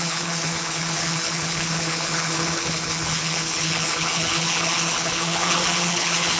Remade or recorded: remade